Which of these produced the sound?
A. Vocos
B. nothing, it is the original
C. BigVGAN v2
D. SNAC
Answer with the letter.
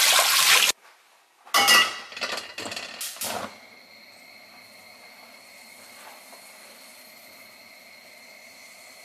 B